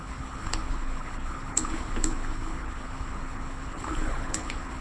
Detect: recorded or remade remade